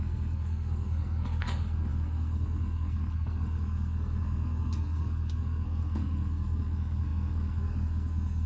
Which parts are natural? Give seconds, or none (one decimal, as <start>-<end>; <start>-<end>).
none